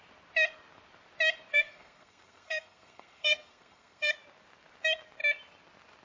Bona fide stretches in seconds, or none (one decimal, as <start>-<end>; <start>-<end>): 0.0-1.5; 4.1-6.0